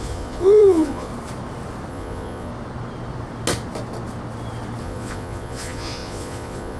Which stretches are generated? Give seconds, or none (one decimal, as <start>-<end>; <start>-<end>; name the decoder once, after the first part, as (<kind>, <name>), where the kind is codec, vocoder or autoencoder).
0.0-1.1 (vocoder, Vocos); 1.9-2.5; 4.8-6.8